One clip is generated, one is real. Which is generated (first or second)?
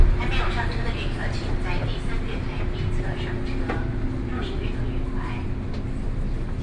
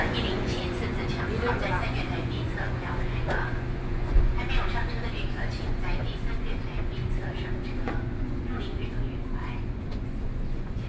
second